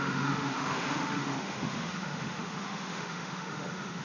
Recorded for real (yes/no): no